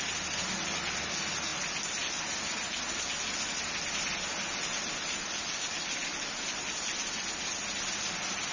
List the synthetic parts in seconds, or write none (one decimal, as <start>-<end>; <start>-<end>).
none